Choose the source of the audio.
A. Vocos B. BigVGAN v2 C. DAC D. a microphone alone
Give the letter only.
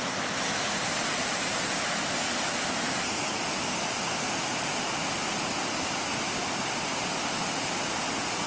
D